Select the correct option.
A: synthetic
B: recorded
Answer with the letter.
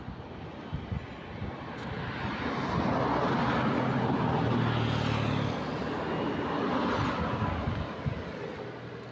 B